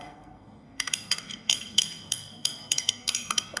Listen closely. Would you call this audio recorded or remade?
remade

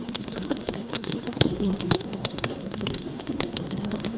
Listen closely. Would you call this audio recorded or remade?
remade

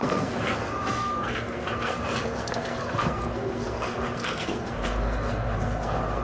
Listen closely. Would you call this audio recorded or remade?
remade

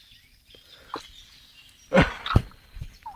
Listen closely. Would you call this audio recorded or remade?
recorded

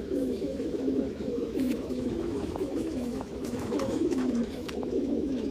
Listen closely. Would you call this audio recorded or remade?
remade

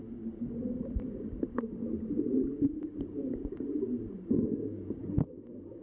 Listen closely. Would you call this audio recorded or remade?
recorded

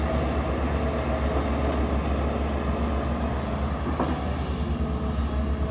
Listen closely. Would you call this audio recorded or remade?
recorded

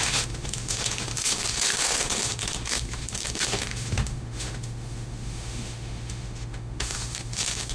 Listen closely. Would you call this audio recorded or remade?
remade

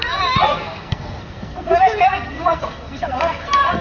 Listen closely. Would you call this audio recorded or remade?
remade